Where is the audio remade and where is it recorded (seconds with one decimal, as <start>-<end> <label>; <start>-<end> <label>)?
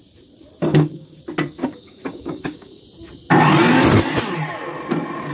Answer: 0.0-0.7 recorded; 0.7-1.2 remade; 1.2-1.6 recorded; 1.6-2.8 remade; 2.8-5.3 recorded